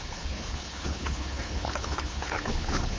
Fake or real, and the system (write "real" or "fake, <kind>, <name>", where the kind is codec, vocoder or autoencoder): fake, codec, HILCodec